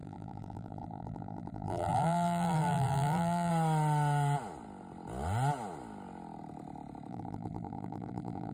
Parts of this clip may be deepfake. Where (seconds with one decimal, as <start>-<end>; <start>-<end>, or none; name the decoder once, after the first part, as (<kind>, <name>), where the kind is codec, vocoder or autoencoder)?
0.0-3.5 (vocoder, BigVGAN v2); 7.1-8.5